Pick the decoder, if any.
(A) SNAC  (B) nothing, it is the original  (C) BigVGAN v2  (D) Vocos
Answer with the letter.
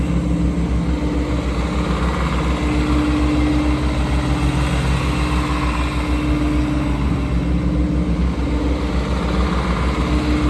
B